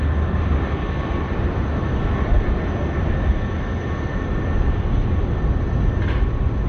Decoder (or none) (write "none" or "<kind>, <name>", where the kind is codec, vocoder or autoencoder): none